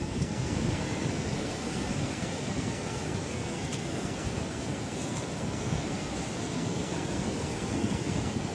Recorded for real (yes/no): no